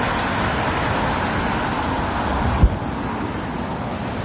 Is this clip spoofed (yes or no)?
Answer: no